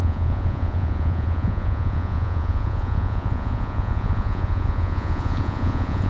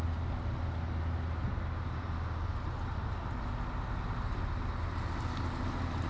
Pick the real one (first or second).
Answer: second